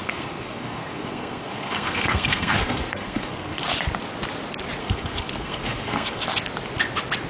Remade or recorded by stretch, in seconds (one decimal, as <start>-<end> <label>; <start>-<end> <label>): 0.0-3.6 remade; 3.6-4.8 recorded; 4.8-6.2 remade; 6.2-7.3 recorded